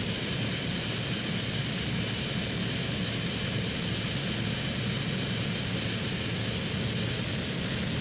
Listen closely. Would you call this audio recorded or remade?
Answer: recorded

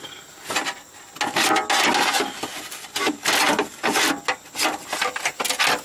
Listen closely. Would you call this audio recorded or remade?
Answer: recorded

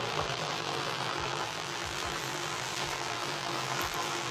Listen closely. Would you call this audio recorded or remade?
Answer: remade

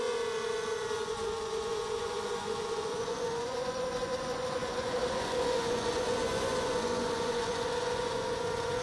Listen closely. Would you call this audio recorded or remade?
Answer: remade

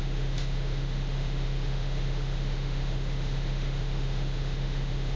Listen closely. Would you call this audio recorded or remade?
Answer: remade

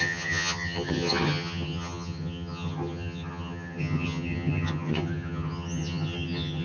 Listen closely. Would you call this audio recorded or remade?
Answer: remade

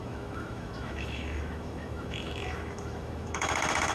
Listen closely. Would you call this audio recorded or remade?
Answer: remade